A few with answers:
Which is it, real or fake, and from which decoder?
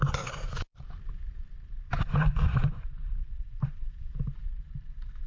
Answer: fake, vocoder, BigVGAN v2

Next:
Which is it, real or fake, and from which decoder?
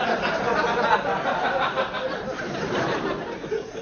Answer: real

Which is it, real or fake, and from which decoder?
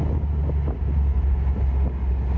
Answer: real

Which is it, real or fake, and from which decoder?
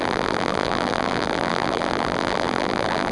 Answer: fake, vocoder, BigVGAN v2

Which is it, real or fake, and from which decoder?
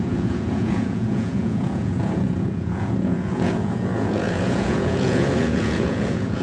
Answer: fake, vocoder, Vocos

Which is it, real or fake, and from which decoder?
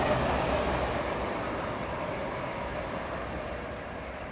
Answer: real